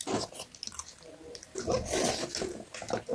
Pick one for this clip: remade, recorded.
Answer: recorded